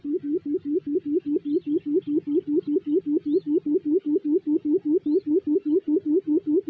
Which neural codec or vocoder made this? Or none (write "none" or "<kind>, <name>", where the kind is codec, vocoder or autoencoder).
none